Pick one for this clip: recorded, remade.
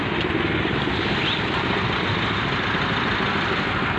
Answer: recorded